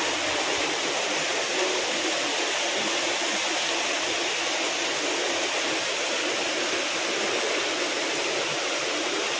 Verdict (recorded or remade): recorded